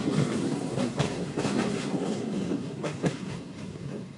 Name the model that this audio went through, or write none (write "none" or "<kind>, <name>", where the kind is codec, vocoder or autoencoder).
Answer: codec, SNAC